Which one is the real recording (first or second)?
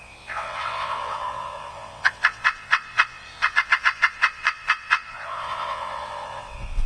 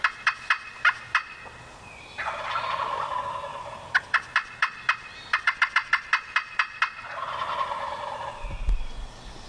second